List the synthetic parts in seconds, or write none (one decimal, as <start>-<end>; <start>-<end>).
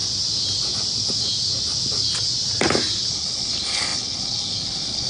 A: 3.1-5.1